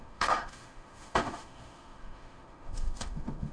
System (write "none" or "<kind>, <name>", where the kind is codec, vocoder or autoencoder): autoencoder, DAC-VAE